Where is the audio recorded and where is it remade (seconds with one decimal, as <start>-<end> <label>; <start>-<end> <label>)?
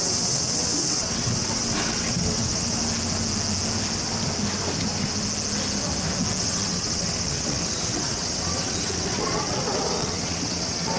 0.0-2.8 remade; 2.8-6.4 recorded; 6.4-11.0 remade